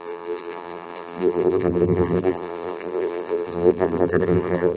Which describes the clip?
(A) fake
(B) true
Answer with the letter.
A